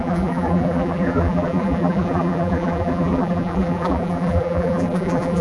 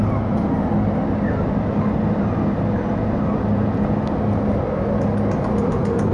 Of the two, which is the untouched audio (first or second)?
second